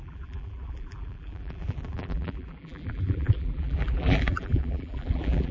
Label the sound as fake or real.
fake